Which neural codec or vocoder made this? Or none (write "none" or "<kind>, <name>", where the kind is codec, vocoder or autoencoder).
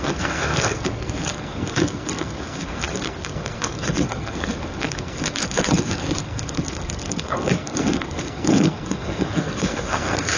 codec, SNAC